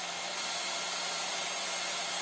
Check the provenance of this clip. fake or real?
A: fake